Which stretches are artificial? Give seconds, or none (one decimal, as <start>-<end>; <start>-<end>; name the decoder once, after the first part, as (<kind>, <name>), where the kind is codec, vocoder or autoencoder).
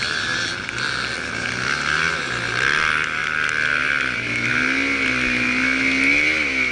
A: none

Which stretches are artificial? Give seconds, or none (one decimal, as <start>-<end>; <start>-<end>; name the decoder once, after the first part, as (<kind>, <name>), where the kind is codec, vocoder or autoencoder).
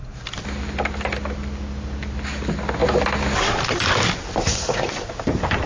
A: 4.4-5.1 (vocoder, Vocos)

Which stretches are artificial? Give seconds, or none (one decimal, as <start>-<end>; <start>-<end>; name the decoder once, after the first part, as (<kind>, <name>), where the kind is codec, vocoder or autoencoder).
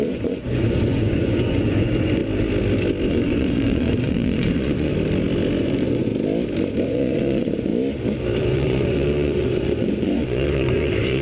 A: 0.0-2.2 (vocoder, Vocos); 3.1-4.9; 5.6-6.1; 6.8-7.7; 8.4-11.2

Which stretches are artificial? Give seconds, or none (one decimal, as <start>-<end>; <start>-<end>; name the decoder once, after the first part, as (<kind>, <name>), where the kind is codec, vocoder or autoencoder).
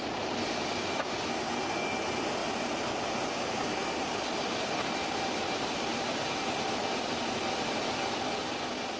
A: none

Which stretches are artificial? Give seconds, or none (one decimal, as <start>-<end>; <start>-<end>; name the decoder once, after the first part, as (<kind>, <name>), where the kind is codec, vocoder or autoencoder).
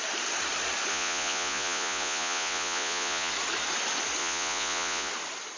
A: 0.9-3.3 (vocoder, Vocos); 4.2-5.1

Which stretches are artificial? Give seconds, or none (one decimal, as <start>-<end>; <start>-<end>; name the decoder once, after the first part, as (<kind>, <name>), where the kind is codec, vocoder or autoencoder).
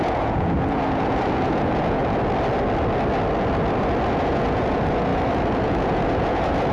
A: 0.0-2.0 (vocoder, Vocos); 4.1-6.7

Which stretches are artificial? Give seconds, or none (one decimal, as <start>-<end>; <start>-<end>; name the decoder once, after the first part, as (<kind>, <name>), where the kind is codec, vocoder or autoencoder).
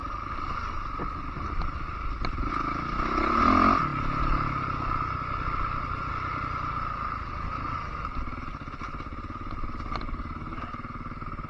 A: none